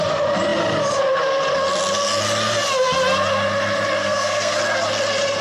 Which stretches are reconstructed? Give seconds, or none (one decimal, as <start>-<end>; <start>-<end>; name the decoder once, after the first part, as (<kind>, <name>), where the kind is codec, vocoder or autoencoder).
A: 4.0-4.6 (codec, SNAC)